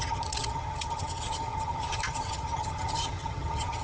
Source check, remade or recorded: remade